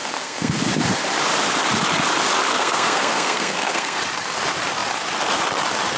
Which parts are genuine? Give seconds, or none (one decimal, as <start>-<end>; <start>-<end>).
0.7-2.4; 4.0-6.0